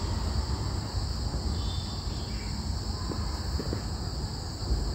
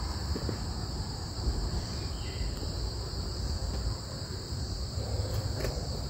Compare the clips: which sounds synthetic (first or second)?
second